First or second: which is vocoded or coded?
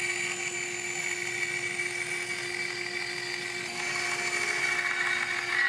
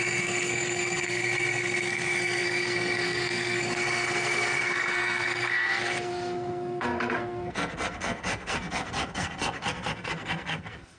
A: second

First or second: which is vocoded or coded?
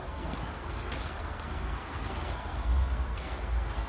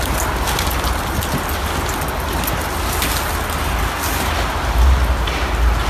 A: first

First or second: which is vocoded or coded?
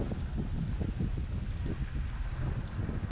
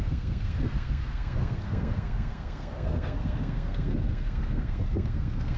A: second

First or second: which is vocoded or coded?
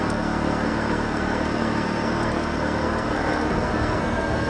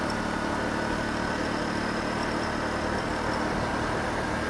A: first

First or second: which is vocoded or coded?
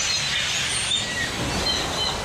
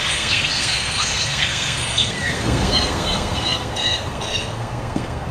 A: second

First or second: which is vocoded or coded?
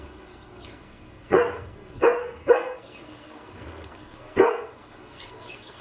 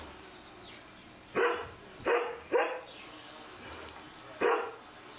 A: first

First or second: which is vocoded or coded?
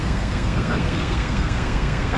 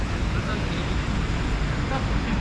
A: first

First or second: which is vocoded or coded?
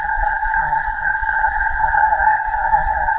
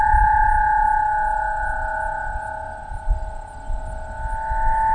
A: first